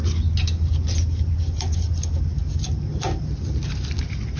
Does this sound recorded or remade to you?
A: recorded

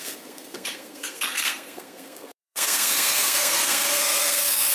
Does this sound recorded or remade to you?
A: remade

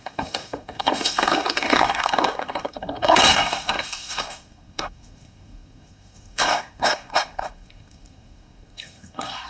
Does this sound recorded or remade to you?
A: remade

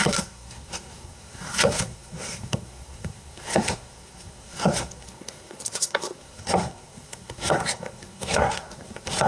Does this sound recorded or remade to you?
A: remade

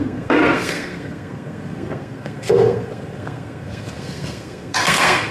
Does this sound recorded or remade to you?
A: remade